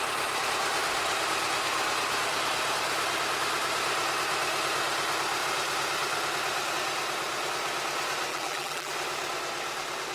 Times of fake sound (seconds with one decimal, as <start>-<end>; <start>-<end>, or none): 8.3-8.9